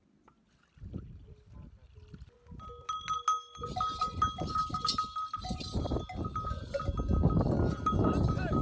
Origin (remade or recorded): recorded